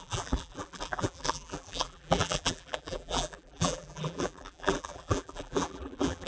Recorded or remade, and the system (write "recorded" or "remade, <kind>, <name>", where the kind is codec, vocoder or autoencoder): remade, vocoder, BigVGAN v2